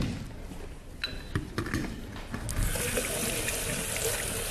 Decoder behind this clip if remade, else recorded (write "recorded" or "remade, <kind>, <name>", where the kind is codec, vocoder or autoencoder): recorded